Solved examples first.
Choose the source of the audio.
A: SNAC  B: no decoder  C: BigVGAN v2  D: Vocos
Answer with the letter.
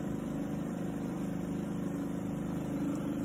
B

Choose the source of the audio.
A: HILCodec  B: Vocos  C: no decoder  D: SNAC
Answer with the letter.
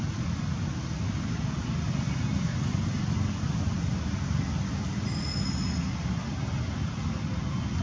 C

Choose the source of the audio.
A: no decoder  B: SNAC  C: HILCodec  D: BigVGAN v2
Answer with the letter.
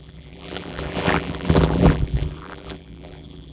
D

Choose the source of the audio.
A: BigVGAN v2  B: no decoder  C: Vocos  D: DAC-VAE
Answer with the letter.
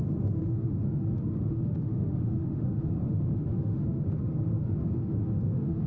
D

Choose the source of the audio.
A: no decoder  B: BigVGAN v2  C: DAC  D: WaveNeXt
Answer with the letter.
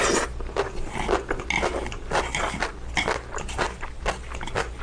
A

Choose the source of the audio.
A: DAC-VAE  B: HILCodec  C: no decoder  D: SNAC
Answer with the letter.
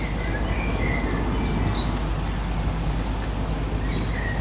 C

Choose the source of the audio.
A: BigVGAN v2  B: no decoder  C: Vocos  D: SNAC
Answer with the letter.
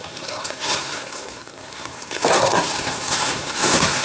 D